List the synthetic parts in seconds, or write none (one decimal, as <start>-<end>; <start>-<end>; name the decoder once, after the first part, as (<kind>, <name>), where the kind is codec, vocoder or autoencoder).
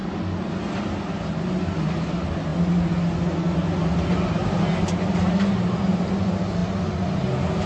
none